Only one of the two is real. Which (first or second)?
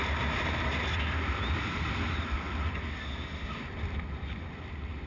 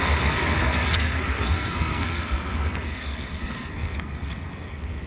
first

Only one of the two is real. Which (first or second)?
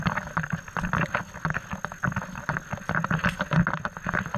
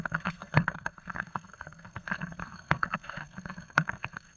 first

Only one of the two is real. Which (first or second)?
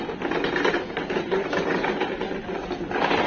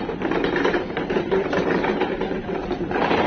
first